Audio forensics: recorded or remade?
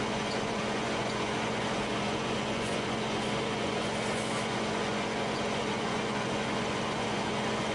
remade